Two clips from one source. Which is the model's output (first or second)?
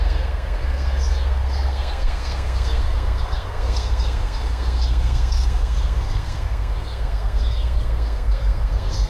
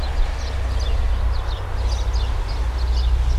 first